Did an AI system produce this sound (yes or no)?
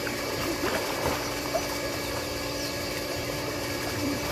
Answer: yes